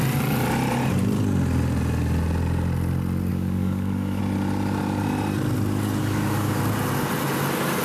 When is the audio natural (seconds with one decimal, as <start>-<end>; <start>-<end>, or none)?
0.0-3.3; 4.2-6.0; 6.6-7.8